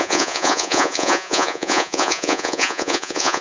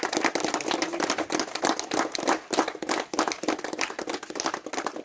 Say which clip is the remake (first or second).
first